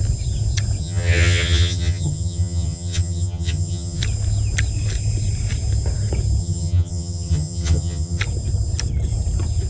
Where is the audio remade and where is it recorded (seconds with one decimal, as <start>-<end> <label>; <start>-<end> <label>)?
0.0-0.8 recorded; 0.8-4.0 remade; 4.0-6.4 recorded; 6.4-8.2 remade; 8.2-9.7 recorded